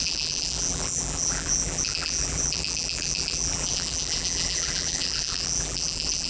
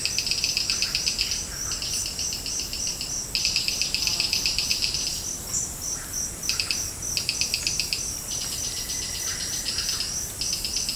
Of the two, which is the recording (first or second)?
second